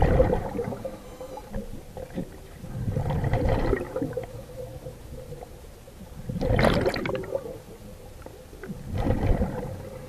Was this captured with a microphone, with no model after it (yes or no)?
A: yes